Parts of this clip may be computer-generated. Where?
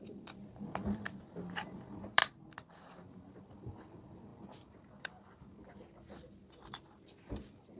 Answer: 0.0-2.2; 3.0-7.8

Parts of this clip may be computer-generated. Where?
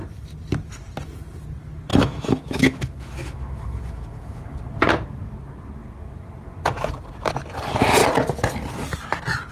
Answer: 1.9-4.6